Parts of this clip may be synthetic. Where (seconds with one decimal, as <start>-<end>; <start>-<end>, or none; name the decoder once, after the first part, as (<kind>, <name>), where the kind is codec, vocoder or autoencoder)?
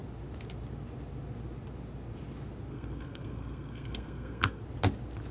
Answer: 2.7-4.6 (codec, SNAC)